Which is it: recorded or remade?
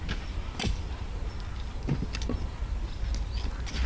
recorded